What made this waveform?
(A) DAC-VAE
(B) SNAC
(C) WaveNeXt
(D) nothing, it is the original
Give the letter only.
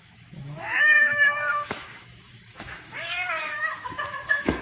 A